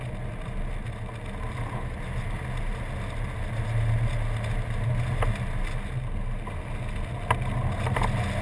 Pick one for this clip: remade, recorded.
recorded